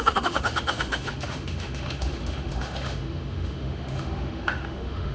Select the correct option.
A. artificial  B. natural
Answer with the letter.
A